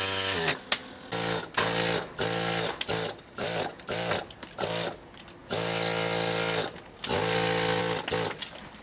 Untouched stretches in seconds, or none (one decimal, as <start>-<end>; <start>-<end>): 0.0-8.8